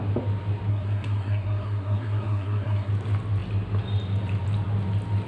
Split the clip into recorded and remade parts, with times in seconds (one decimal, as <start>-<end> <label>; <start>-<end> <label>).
0.0-0.7 recorded; 0.7-2.9 remade; 2.9-5.3 recorded